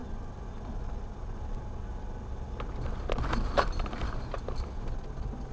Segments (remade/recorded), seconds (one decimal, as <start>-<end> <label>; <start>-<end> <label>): 0.0-5.5 recorded